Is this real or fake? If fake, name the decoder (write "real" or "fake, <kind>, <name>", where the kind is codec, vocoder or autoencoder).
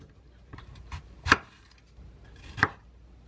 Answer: fake, vocoder, BigVGAN v2